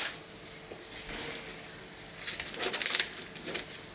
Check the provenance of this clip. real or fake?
real